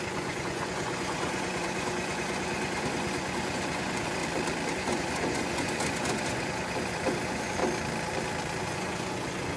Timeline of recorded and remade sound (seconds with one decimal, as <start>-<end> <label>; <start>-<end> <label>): 0.0-4.2 remade; 4.2-4.7 recorded; 4.7-7.6 remade; 7.6-8.6 recorded; 8.6-9.6 remade